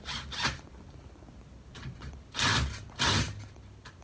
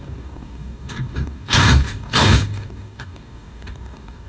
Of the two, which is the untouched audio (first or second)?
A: first